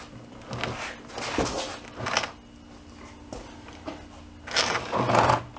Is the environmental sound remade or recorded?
recorded